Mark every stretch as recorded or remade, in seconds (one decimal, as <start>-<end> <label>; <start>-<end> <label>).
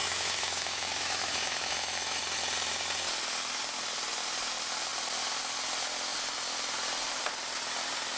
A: 0.0-2.2 remade; 2.2-8.2 recorded